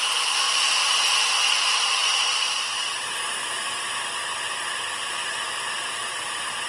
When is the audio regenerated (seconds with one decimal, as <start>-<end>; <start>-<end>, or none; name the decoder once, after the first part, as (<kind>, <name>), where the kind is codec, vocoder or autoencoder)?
0.8-1.3 (vocoder, BigVGAN v2); 2.1-3.0; 5.2-5.8